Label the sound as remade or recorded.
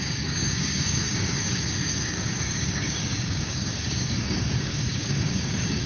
remade